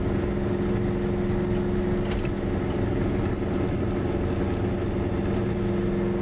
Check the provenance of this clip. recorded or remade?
recorded